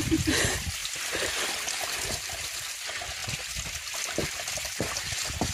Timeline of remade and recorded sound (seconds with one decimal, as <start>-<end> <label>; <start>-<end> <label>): 0.0-5.5 recorded